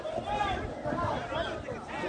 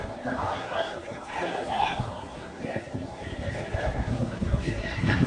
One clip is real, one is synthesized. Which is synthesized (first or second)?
second